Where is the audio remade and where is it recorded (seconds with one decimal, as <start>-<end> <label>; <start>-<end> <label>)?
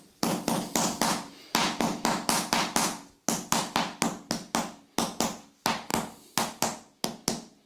0.0-7.7 recorded